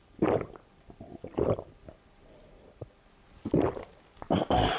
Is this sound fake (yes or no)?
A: yes